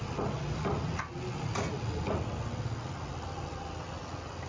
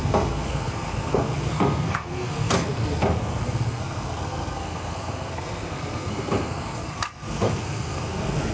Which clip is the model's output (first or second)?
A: second